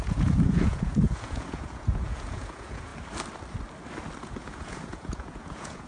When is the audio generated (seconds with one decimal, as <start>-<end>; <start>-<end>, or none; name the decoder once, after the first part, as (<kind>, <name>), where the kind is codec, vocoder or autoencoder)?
0.0-2.9 (vocoder, Vocos); 4.2-5.9